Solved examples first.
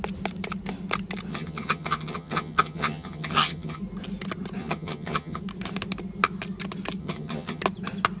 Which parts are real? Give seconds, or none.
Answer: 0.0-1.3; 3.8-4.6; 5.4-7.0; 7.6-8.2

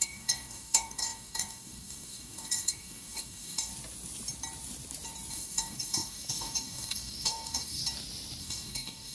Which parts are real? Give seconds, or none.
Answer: 3.7-5.3; 7.8-8.4